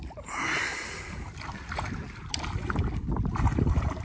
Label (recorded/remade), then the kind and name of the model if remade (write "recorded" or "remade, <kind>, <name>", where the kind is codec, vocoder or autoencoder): recorded